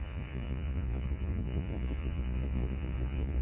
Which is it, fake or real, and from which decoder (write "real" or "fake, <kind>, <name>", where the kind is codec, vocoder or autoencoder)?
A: fake, vocoder, Vocos